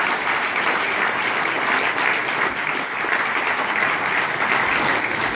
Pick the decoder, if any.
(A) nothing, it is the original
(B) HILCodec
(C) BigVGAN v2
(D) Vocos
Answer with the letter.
A